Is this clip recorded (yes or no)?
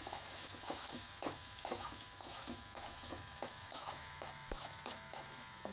no